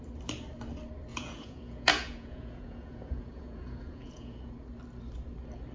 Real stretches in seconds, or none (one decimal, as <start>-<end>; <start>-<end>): 0.0-1.1; 4.5-5.7